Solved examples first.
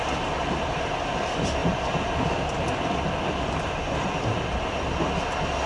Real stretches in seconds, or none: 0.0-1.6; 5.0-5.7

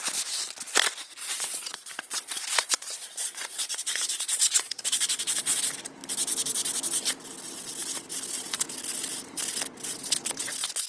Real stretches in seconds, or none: 0.0-1.2; 5.6-10.9

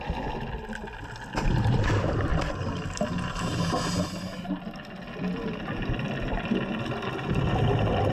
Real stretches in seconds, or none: 0.0-8.1

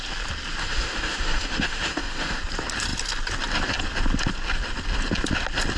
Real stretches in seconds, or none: 0.0-0.6; 2.4-5.8

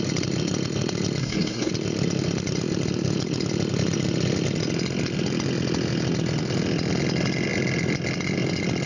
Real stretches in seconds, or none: 0.0-1.2; 1.7-8.9

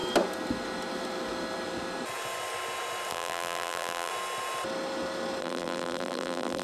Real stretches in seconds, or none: 0.0-3.1; 4.1-5.4